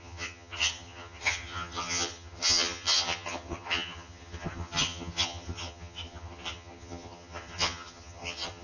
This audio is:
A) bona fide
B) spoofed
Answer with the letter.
B